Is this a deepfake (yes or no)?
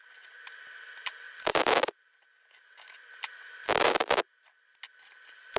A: no